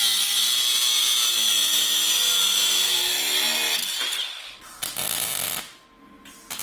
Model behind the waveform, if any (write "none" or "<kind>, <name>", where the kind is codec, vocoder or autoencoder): none